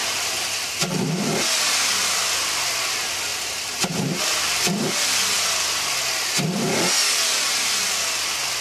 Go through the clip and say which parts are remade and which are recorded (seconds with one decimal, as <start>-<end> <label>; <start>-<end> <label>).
0.0-1.3 remade; 1.3-3.3 recorded; 3.3-4.2 remade; 4.2-8.6 recorded